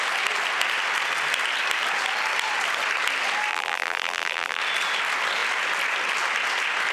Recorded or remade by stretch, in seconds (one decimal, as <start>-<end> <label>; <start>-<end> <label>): 0.0-3.5 recorded; 3.5-4.6 remade; 4.6-6.9 recorded